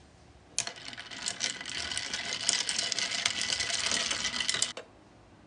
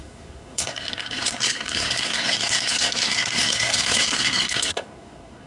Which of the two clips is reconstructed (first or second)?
second